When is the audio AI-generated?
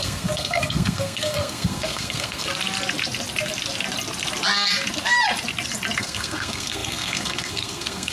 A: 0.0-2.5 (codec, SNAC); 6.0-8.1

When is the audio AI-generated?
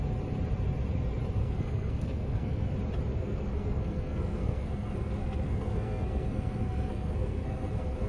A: 1.4-2.7 (codec, SNAC); 3.1-8.1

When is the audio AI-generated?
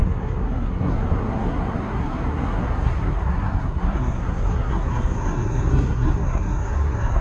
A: 0.0-7.2 (codec, SNAC)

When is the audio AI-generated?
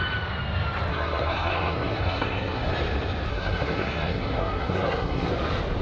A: 0.9-2.7 (codec, SNAC); 3.3-5.3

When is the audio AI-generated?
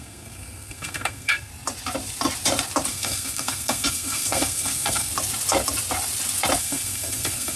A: 0.0-1.5 (codec, SNAC); 2.9-5.1; 6.6-7.6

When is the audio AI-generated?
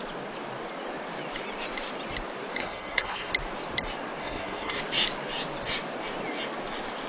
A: 2.6-3.3 (codec, SNAC); 4.2-4.8